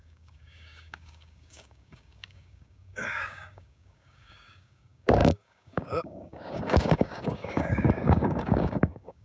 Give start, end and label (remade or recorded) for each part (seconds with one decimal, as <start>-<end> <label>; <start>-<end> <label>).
0.0-9.2 remade